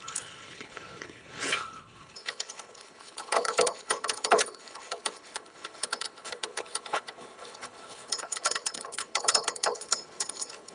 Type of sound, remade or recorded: remade